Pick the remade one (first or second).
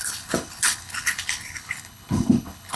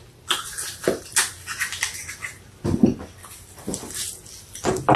first